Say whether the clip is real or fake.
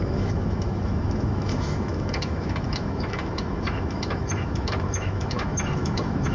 fake